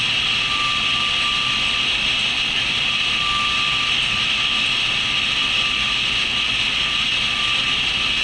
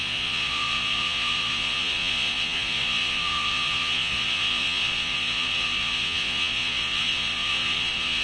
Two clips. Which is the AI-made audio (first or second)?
second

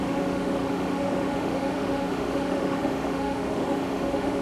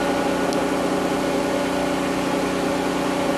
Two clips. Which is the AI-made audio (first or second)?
first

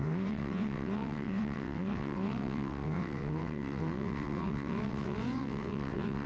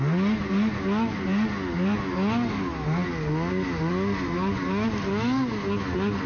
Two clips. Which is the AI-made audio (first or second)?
first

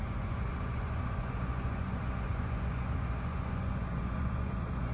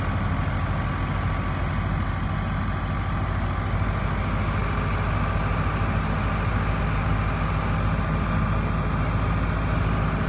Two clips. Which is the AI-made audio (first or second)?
first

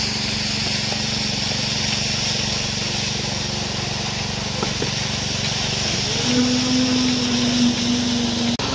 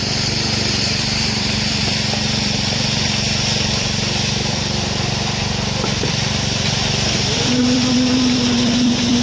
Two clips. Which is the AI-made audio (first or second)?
second